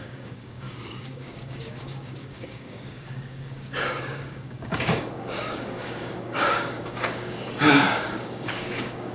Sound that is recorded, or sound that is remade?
remade